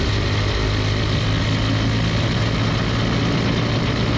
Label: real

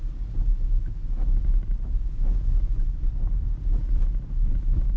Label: real